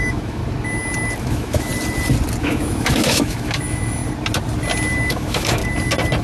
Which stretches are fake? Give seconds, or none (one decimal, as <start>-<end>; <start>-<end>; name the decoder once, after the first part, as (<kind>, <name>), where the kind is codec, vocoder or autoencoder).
0.0-0.4 (autoencoder, DAC-VAE); 1.2-1.7; 2.4-4.0; 5.1-5.6